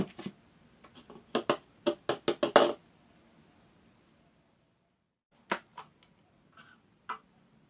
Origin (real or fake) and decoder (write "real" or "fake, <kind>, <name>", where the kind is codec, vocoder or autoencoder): real